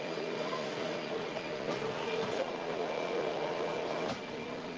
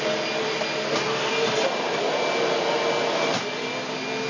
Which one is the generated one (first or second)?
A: first